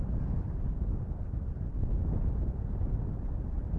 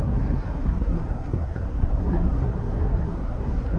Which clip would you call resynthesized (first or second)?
second